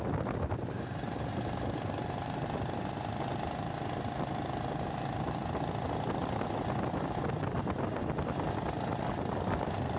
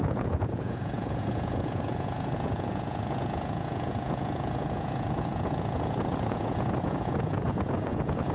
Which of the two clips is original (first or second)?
first